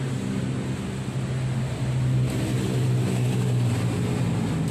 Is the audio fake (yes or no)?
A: no